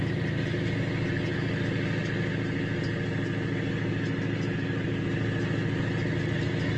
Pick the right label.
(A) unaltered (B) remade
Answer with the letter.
A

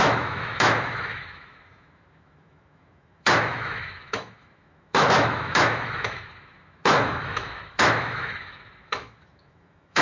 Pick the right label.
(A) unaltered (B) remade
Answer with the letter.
B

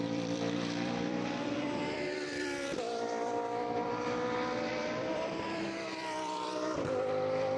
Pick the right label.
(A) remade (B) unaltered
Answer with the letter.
A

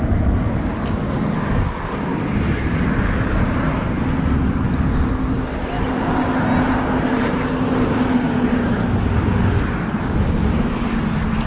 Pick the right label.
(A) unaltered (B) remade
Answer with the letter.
A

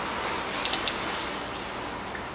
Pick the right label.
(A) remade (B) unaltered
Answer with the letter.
B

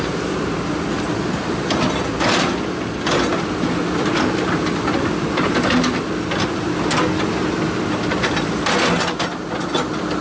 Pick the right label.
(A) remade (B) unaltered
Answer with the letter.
B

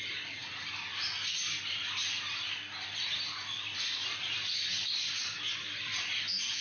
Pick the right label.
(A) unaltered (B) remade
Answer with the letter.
A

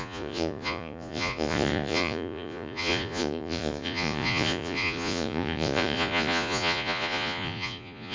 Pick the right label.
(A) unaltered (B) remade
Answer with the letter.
B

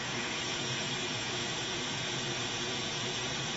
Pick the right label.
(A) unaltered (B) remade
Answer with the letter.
B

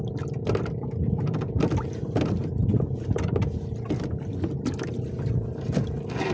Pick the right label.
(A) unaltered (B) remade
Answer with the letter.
A